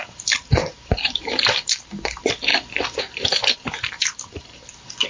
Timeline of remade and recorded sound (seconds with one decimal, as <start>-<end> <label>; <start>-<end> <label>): 0.0-2.5 remade; 2.5-3.0 recorded; 3.0-4.6 remade; 4.6-5.1 recorded